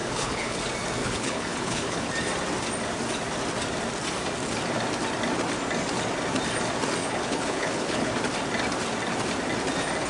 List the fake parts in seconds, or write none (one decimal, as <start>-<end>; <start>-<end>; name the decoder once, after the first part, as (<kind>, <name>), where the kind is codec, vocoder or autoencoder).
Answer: 0.0-0.6 (codec, HILCodec); 1.0-2.1; 7.0-8.1